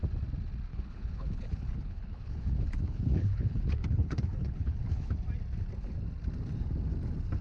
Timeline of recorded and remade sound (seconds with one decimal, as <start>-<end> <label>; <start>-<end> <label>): 0.0-0.7 recorded; 0.7-5.1 remade; 5.1-7.4 recorded